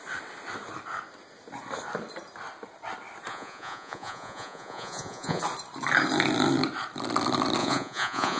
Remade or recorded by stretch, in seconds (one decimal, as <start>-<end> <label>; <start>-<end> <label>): 0.0-3.3 recorded; 3.3-5.4 remade; 5.4-7.6 recorded; 7.6-8.4 remade